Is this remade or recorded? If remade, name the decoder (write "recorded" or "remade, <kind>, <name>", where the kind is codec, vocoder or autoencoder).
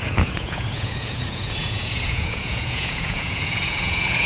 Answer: remade, vocoder, Vocos